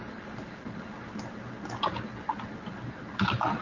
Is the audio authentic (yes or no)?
yes